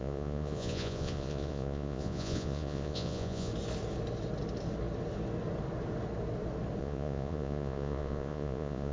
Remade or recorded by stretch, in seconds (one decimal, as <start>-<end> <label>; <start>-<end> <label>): 0.0-3.5 remade; 3.5-6.8 recorded; 6.8-8.9 remade